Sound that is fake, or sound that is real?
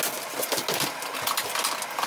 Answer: real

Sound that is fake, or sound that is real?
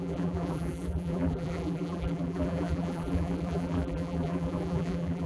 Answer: fake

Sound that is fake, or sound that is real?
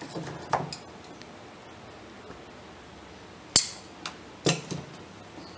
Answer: real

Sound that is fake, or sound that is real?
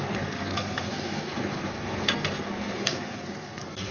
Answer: fake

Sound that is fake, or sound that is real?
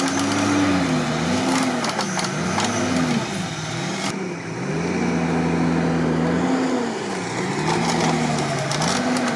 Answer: real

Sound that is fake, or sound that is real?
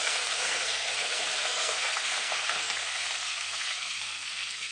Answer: fake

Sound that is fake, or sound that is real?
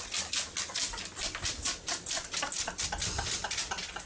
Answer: real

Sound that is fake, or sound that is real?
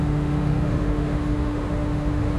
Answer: fake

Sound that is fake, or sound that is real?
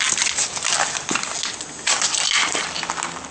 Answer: real